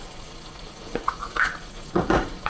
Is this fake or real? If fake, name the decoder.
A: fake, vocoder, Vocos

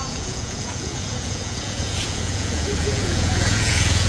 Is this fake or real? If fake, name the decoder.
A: fake, vocoder, Vocos